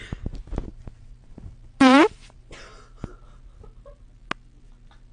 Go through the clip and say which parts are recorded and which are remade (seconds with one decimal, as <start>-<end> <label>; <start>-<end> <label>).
0.0-0.7 recorded; 0.7-2.8 remade; 2.8-5.1 recorded